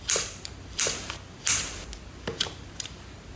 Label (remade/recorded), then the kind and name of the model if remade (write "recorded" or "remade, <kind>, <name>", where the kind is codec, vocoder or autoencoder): recorded